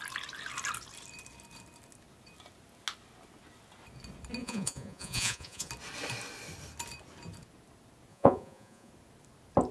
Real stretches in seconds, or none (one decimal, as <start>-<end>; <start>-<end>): 0.0-4.4; 5.7-8.1; 8.9-9.7